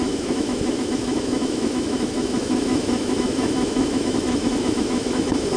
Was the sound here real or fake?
fake